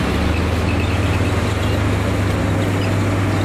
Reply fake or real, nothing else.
real